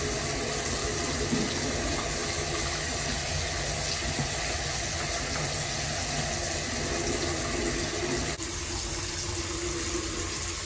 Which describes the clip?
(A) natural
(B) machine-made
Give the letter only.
A